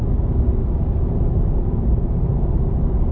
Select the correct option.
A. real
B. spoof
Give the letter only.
A